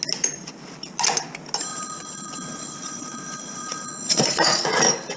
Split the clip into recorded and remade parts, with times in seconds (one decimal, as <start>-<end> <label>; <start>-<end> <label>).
0.0-1.7 recorded; 1.7-4.8 remade; 4.8-5.2 recorded